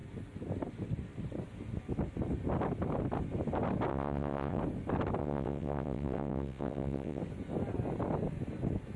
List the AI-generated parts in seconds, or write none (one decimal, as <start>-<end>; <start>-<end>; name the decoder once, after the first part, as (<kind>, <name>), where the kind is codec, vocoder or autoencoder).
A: 3.9-4.6 (vocoder, WaveNeXt); 5.2-7.2